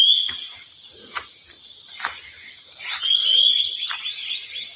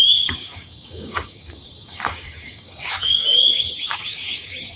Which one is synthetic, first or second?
second